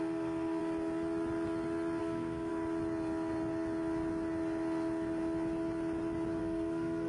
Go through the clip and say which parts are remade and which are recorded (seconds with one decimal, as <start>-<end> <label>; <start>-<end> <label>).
0.0-0.6 remade; 0.6-2.0 recorded; 2.0-2.5 remade; 2.5-6.4 recorded; 6.4-7.1 remade